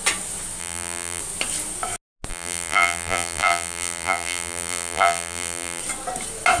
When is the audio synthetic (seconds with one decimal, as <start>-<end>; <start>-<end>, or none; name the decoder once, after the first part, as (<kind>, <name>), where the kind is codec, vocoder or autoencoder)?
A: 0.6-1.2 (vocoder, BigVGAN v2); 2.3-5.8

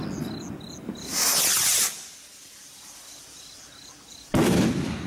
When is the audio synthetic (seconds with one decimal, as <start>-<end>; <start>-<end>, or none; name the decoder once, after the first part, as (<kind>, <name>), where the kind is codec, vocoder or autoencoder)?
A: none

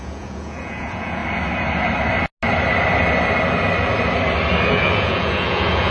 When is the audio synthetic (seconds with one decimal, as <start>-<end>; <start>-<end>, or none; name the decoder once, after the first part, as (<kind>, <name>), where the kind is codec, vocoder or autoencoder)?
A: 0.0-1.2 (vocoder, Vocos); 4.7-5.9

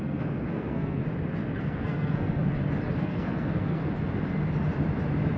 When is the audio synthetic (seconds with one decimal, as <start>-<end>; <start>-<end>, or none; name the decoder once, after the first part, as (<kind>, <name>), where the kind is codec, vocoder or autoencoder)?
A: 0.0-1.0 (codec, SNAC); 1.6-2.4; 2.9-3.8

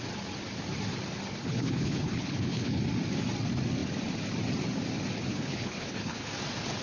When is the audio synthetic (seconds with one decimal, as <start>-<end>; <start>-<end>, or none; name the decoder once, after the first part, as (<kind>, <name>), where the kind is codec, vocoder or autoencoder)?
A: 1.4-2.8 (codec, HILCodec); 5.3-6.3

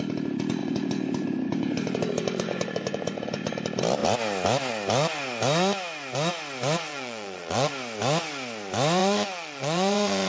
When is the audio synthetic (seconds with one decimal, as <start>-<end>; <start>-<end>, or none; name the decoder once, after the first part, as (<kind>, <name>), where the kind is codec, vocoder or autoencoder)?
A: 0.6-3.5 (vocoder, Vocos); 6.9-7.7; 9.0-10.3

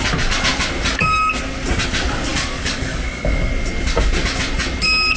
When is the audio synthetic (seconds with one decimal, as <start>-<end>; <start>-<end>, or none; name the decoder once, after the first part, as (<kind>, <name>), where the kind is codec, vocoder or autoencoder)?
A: 2.3-3.5 (codec, DAC)